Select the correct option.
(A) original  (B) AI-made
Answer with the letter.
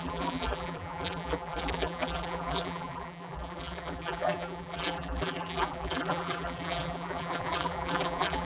B